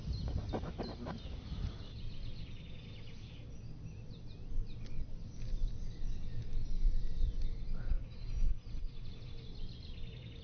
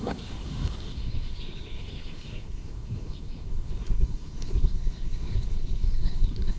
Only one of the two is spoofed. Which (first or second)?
second